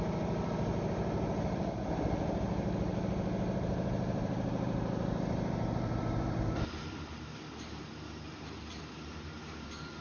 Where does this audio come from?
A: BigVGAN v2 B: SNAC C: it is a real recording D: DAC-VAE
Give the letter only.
A